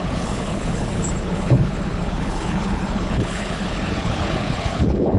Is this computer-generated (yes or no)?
yes